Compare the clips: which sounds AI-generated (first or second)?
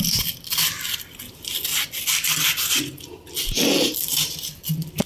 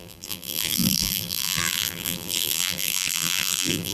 second